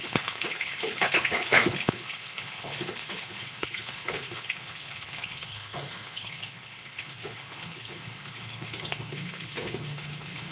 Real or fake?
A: fake